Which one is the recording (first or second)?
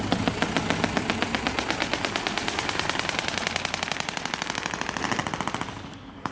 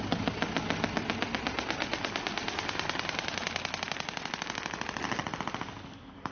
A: second